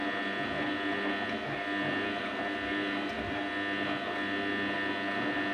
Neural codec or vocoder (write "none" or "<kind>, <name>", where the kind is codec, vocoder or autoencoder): none